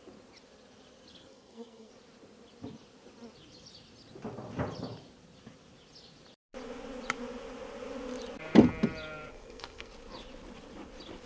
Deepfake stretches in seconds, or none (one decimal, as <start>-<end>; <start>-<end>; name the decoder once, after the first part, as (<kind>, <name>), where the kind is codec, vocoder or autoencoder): 1.2-1.9 (codec, SNAC); 9.3-9.9